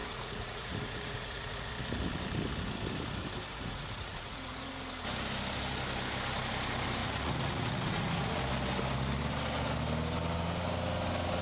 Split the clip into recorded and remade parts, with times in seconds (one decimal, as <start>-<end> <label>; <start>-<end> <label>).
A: 0.0-1.7 remade; 1.7-3.5 recorded; 3.5-4.7 remade; 4.7-7.0 recorded; 7.0-8.4 remade; 8.4-11.4 recorded